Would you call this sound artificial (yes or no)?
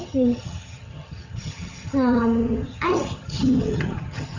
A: yes